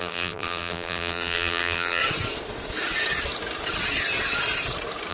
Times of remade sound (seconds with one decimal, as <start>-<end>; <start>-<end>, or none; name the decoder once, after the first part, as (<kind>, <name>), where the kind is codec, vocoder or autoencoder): 0.0-2.0 (vocoder, BigVGAN v2)

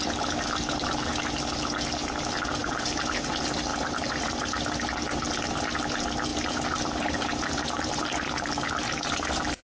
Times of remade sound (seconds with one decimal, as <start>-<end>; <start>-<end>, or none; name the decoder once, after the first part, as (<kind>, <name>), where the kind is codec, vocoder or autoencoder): 2.6-3.3 (vocoder, BigVGAN v2); 3.7-4.4; 6.3-9.7

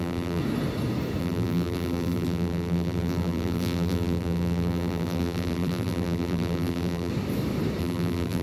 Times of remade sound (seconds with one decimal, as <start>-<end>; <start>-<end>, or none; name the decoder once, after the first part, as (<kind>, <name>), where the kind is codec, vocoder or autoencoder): 0.0-0.4 (vocoder, BigVGAN v2); 1.2-7.1; 7.8-8.4

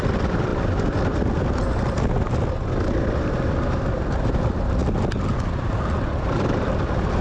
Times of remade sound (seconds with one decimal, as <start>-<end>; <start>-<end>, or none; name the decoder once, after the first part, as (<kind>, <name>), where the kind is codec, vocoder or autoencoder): 0.0-0.5 (vocoder, BigVGAN v2); 4.3-7.2

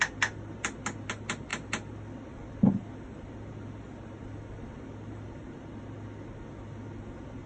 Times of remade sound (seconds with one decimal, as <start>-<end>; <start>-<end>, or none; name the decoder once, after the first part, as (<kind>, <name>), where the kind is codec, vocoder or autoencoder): none

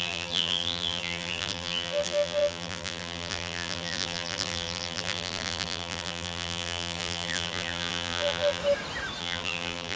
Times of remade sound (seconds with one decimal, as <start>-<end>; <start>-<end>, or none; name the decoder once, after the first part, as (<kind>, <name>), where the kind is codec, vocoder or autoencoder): 0.0-8.6 (vocoder, BigVGAN v2); 9.2-10.0

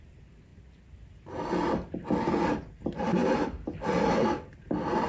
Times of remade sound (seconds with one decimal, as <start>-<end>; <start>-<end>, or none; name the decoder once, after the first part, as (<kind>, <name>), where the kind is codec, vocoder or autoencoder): none

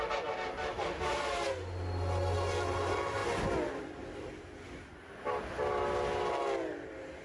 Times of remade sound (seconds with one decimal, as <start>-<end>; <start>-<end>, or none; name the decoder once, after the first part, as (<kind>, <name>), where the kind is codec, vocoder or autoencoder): none